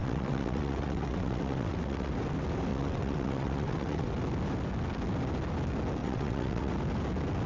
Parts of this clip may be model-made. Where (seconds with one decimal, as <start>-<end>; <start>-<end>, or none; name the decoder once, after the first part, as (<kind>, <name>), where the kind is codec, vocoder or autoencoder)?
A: 0.0-2.1 (vocoder, WaveNeXt); 2.7-4.1; 6.0-6.7